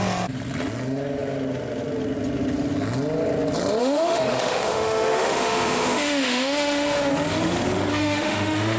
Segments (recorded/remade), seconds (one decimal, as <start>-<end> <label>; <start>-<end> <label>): 0.0-3.8 recorded; 3.8-7.1 remade; 7.1-7.9 recorded; 7.9-8.8 remade